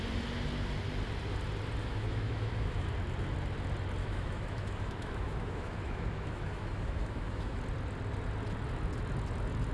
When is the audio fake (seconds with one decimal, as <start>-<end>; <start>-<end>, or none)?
1.8-2.9; 4.0-7.6